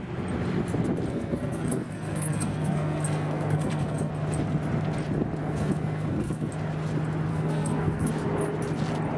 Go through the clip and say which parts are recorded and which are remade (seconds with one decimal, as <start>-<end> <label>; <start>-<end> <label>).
0.0-1.1 recorded; 1.1-4.1 remade; 4.1-5.4 recorded; 5.4-6.5 remade; 6.5-7.3 recorded; 7.3-8.1 remade; 8.1-9.2 recorded